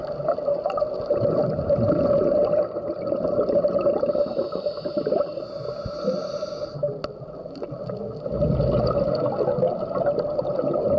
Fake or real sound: real